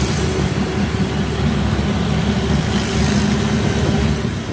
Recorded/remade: recorded